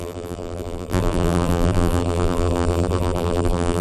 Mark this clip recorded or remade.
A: remade